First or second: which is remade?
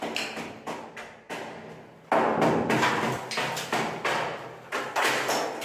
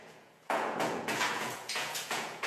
second